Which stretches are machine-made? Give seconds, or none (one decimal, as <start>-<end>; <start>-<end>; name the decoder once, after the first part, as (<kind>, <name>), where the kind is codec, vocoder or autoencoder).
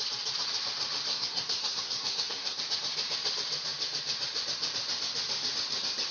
1.1-2.6 (codec, SNAC)